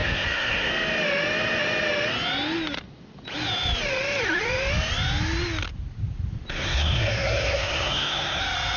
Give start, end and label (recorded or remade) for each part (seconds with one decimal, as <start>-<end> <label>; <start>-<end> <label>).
0.0-0.7 remade; 0.7-6.5 recorded; 6.5-8.4 remade; 8.4-8.8 recorded